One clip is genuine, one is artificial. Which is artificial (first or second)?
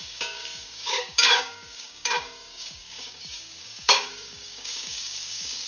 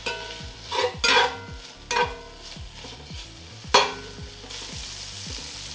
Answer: first